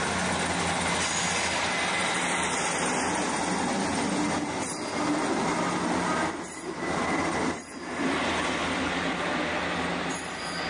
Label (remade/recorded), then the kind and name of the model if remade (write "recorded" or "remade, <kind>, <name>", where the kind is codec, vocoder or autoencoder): recorded